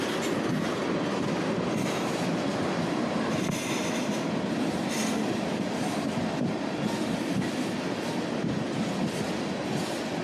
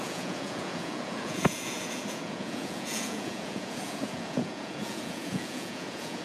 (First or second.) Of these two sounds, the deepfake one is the second